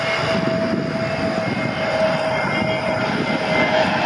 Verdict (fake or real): real